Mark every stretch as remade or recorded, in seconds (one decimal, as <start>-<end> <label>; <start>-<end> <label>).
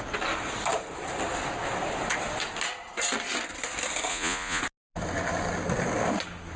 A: 0.0-4.1 recorded; 4.1-4.6 remade; 4.6-6.6 recorded